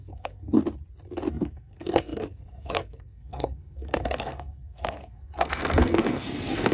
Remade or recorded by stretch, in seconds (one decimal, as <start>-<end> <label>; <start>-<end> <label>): 0.0-0.6 remade; 0.6-1.3 recorded; 1.3-6.7 remade